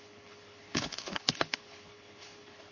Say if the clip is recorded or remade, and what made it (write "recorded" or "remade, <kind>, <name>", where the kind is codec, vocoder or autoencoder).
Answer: remade, codec, HILCodec